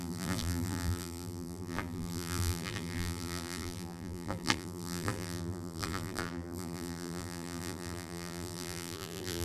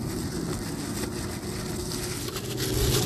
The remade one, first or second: first